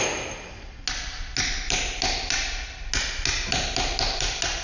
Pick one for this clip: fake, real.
real